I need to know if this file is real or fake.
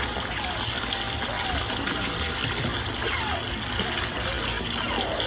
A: real